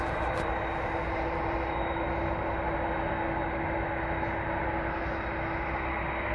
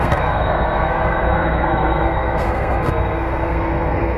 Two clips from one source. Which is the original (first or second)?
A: first